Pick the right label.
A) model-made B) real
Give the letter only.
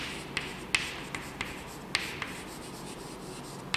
B